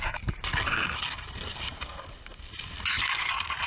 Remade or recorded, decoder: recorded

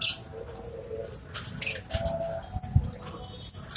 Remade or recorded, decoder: recorded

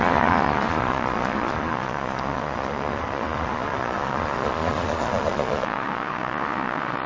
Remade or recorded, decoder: remade, vocoder, Vocos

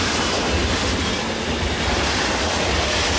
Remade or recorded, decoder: recorded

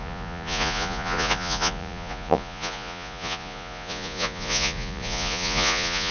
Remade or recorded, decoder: remade, vocoder, Vocos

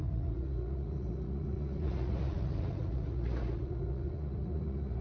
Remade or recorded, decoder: remade, vocoder, Vocos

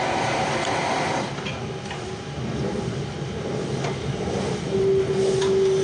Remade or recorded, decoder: recorded